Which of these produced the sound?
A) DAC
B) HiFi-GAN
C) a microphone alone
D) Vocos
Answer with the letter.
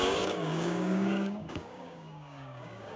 A